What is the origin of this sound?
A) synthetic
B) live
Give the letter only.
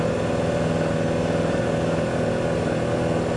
B